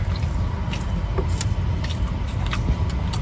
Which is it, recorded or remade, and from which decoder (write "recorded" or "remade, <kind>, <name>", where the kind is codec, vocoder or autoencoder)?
recorded